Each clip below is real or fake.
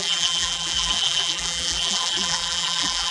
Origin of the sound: fake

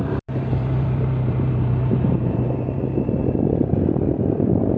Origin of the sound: fake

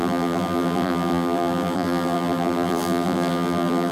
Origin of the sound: fake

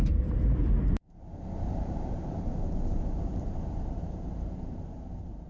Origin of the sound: fake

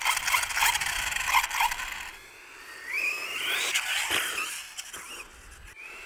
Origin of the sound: real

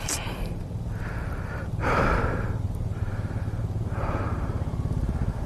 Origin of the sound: fake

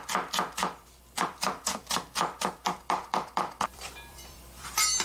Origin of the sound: fake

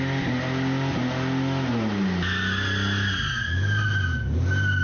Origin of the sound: real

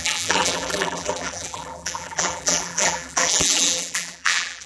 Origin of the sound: fake